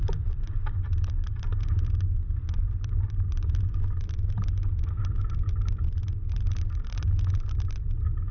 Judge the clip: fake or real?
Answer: real